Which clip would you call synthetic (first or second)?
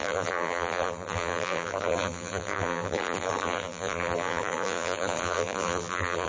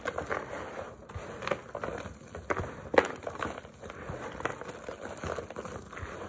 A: first